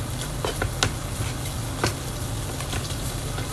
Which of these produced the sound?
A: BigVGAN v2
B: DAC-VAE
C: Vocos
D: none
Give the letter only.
D